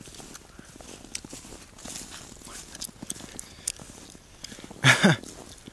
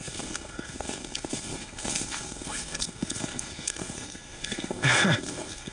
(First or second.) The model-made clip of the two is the second